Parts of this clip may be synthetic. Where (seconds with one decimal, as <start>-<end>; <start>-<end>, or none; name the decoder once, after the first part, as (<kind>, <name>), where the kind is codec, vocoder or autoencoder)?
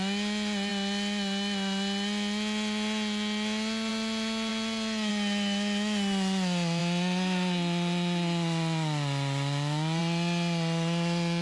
none